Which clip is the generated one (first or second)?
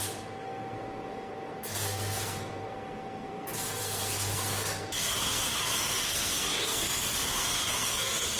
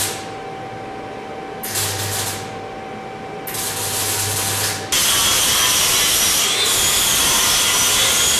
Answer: first